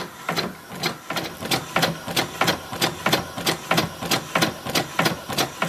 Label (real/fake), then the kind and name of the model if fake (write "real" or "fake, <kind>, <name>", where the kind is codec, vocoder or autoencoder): real